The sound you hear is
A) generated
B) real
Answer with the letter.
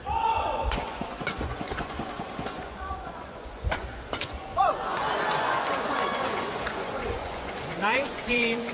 A